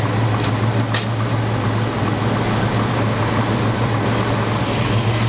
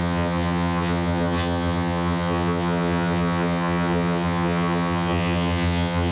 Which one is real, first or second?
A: first